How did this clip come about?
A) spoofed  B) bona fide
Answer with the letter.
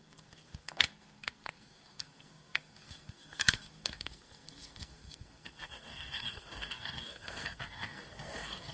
A